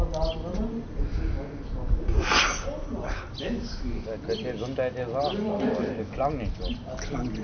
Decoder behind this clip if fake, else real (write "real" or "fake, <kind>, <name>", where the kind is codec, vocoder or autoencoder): real